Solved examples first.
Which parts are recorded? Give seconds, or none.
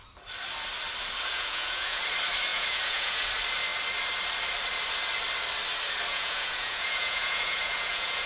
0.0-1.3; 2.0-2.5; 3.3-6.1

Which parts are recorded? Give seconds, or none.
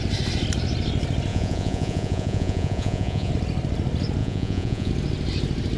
0.0-1.3; 3.3-4.2; 4.9-5.8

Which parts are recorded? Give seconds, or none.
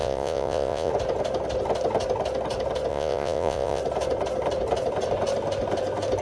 0.9-2.9; 3.8-6.2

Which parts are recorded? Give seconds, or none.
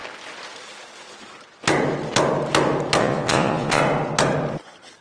0.0-3.0; 3.8-5.0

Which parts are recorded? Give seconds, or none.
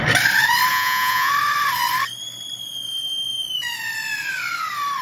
0.0-0.7; 1.3-5.0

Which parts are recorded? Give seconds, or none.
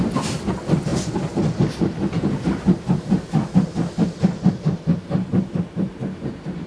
0.0-6.7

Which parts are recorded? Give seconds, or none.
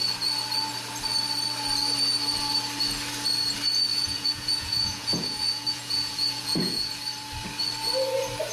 0.0-3.9; 7.0-8.5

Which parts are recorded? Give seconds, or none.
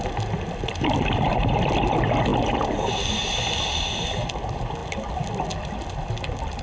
0.0-6.6